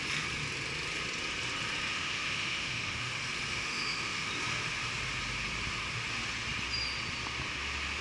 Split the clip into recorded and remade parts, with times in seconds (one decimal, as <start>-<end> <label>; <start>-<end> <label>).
0.0-1.9 recorded; 1.9-3.1 remade; 3.1-3.5 recorded; 3.5-4.3 remade; 4.3-8.0 recorded